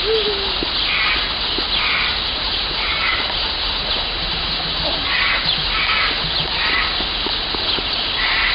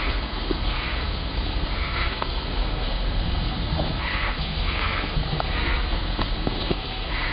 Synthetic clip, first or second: second